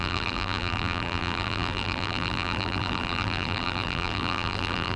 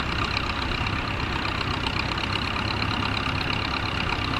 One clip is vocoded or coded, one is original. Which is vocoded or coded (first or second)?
first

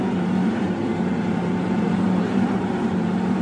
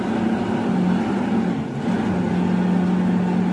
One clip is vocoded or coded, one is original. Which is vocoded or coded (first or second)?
first